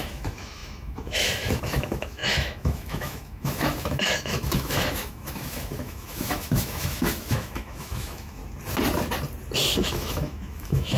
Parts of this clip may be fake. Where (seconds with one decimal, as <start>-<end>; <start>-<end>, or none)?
0.0-8.4; 9.8-11.0

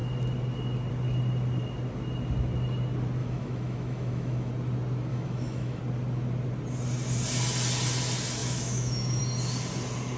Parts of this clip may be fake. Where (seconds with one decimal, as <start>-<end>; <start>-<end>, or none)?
3.2-4.5; 5.1-5.8; 8.4-9.2

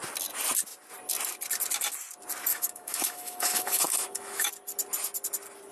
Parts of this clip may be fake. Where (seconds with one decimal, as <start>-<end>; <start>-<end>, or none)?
2.5-4.5

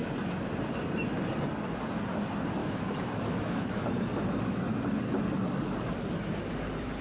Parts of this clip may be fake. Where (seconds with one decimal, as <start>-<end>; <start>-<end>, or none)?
2.6-3.9

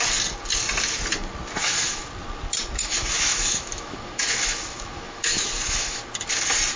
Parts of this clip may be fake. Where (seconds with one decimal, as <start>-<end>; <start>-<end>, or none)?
1.6-2.1; 2.8-6.0

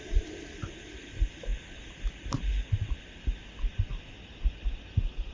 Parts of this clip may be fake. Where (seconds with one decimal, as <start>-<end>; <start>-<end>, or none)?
none

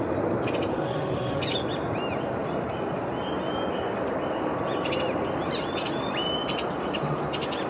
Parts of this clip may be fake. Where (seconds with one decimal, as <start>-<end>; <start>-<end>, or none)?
0.7-1.4